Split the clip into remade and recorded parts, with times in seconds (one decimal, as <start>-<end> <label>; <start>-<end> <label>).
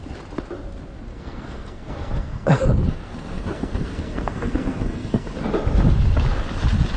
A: 0.0-1.1 recorded; 1.1-5.3 remade; 5.3-7.0 recorded